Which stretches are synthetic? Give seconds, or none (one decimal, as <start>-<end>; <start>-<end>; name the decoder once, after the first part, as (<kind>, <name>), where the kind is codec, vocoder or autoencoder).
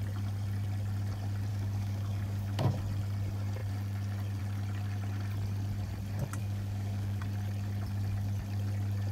1.5-2.8 (codec, DAC); 6.4-7.2